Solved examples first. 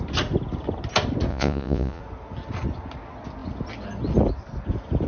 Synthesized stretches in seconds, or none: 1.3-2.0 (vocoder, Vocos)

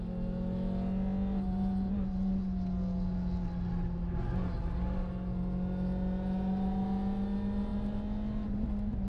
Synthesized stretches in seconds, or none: none